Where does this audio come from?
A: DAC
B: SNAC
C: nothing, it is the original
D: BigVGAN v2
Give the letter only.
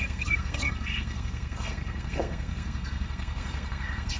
B